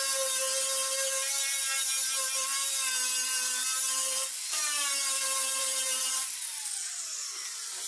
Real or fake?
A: real